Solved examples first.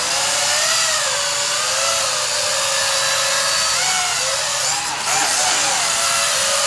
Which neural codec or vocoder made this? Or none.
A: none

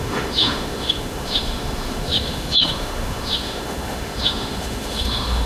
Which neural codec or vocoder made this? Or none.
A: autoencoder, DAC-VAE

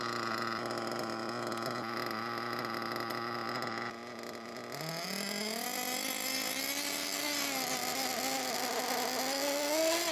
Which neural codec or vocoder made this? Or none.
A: none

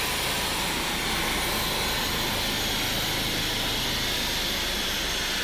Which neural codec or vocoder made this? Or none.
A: none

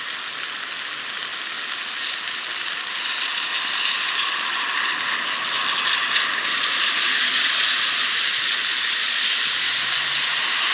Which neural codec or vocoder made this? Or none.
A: none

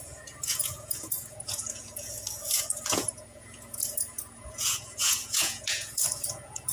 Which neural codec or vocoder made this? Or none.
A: vocoder, Vocos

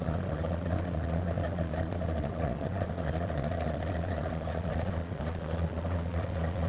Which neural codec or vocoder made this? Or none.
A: vocoder, Vocos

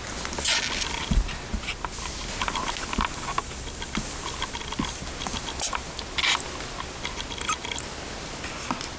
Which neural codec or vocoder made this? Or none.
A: none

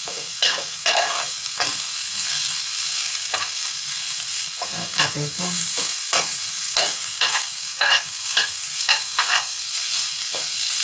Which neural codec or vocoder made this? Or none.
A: codec, SNAC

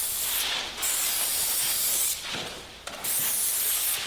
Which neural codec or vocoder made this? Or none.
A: none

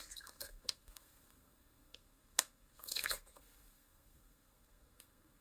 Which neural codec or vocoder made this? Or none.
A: codec, SNAC